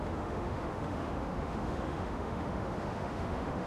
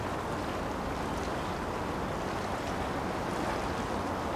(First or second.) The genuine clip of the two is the second